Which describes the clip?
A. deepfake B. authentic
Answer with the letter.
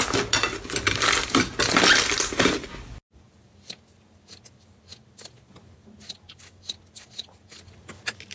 B